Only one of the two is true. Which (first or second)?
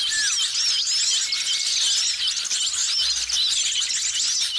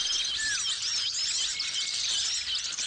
first